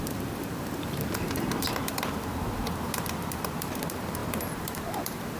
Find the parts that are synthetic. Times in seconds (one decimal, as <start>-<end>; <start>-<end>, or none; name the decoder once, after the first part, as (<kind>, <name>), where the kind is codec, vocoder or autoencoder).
0.0-5.4 (vocoder, BigVGAN v2)

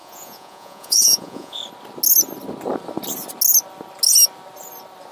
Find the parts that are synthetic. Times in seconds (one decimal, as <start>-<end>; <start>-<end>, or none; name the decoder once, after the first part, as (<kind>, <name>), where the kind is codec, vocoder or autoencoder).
0.0-1.6 (vocoder, Vocos)

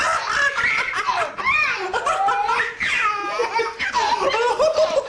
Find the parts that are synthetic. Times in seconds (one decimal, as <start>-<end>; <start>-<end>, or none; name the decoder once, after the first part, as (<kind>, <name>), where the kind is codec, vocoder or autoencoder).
none

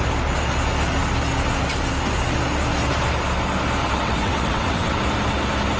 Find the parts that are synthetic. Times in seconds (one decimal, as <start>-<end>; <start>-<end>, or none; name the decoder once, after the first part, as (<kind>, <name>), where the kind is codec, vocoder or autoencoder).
3.8-5.0 (vocoder, WaveNeXt)